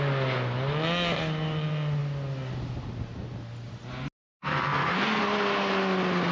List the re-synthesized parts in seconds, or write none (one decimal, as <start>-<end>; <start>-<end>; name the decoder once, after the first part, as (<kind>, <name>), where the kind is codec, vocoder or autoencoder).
4.4-5.2 (codec, SNAC)